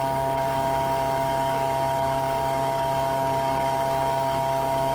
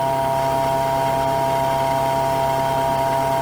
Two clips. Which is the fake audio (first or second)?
first